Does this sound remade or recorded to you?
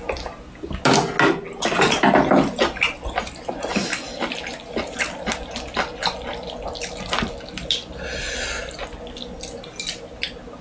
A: recorded